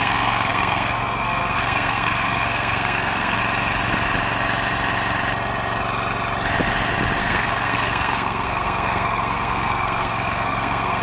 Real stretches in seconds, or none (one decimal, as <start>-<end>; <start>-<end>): 3.4-7.2